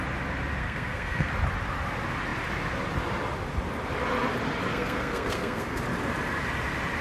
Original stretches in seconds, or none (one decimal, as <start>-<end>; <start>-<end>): 0.0-0.6; 1.3-4.7; 5.8-7.0